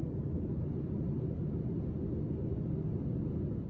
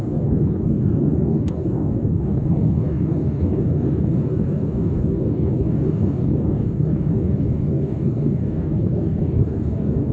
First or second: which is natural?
first